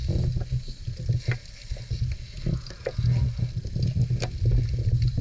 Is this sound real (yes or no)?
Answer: yes